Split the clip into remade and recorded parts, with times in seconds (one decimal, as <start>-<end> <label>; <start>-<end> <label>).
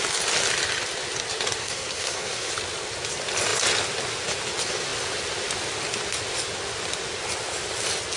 0.0-1.6 recorded; 1.6-2.5 remade; 2.5-8.2 recorded